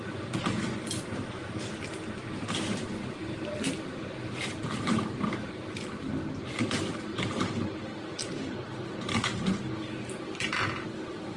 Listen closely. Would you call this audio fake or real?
real